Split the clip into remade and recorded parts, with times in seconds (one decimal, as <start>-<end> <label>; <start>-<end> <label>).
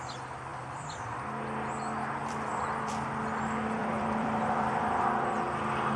0.0-0.5 recorded; 0.5-1.2 remade; 1.2-2.2 recorded; 2.2-2.9 remade; 2.9-3.8 recorded; 3.8-4.8 remade; 4.8-6.0 recorded